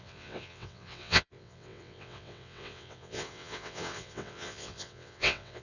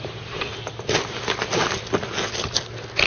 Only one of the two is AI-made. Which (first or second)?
first